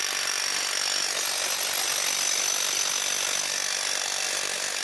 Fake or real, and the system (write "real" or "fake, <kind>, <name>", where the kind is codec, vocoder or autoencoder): real